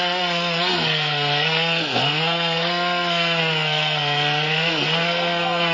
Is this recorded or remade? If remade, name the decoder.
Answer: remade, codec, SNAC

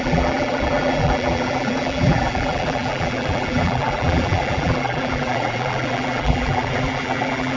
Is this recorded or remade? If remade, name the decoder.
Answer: remade, vocoder, BigVGAN v2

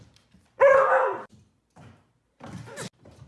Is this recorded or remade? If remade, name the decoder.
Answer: recorded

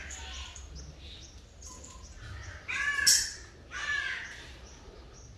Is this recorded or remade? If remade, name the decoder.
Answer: recorded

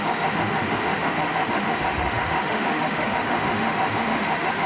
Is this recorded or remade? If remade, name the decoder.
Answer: remade, autoencoder, DAC-VAE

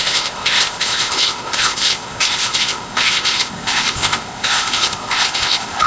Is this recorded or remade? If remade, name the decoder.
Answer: remade, codec, ZipCodec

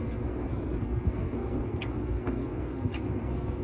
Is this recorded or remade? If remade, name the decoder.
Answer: remade, codec, SNAC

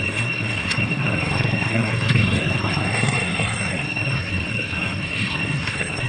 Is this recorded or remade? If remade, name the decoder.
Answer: remade, codec, SNAC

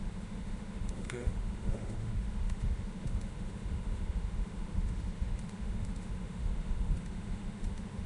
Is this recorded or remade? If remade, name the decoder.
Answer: remade, autoencoder, DAC-VAE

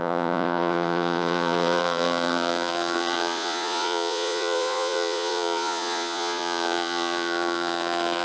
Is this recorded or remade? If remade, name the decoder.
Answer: remade, vocoder, Vocos